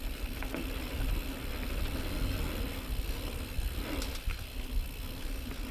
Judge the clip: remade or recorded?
recorded